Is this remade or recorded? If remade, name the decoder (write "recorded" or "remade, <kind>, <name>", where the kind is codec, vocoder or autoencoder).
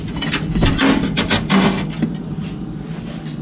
recorded